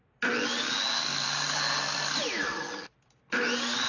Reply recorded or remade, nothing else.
recorded